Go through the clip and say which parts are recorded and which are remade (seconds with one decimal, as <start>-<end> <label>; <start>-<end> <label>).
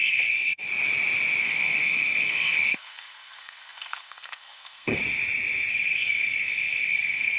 0.0-0.7 remade; 0.7-1.4 recorded; 1.4-5.0 remade; 5.0-5.7 recorded; 5.7-7.4 remade